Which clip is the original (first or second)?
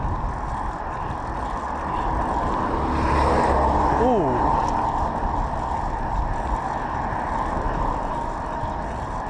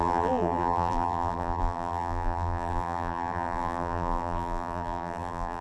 first